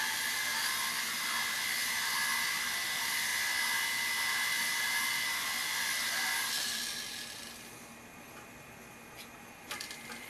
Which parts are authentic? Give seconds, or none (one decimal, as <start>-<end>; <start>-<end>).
0.0-10.3